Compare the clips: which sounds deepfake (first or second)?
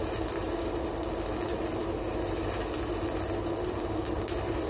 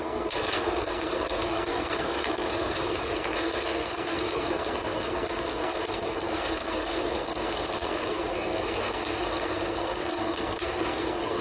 second